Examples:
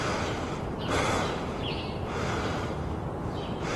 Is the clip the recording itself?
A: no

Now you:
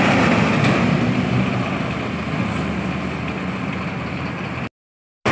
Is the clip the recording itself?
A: yes